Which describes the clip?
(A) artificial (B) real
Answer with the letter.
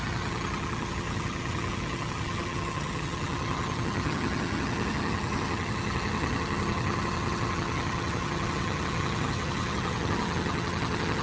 A